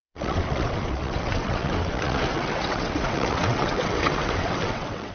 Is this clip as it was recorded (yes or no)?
no